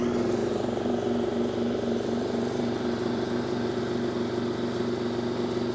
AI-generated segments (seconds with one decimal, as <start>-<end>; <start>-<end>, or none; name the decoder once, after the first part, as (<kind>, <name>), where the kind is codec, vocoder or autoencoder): 0.4-3.8 (vocoder, BigVGAN v2)